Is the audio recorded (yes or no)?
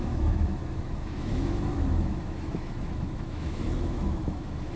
no